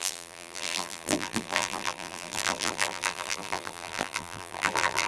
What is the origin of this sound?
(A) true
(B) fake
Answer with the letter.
B